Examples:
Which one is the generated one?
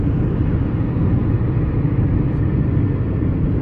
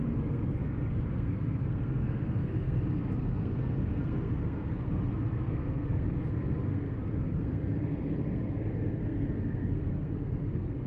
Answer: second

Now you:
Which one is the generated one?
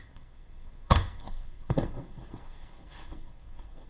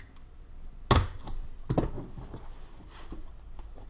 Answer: first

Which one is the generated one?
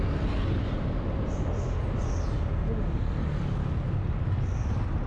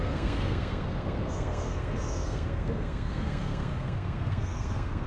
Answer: second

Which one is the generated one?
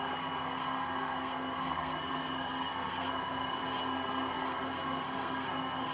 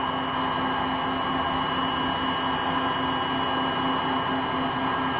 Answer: first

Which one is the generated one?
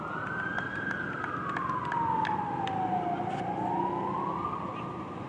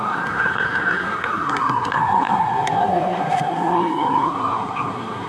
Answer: second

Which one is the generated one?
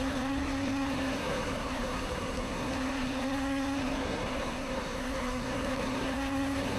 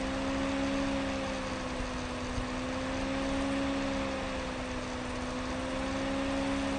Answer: first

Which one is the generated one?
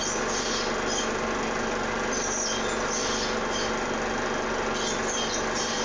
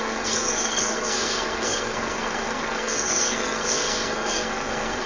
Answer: second